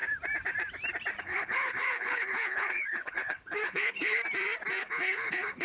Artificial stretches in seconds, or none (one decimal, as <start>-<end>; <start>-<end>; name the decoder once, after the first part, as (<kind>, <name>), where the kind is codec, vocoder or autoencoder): 1.2-4.2 (codec, HILCodec); 4.8-5.6